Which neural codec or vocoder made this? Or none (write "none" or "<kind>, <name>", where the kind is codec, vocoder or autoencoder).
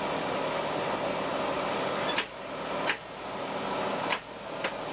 none